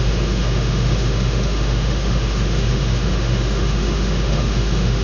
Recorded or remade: remade